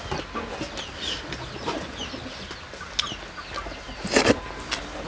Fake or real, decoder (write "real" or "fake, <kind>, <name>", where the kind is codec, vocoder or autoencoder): real